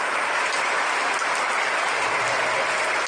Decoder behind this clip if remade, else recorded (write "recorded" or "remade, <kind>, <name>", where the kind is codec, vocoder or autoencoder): recorded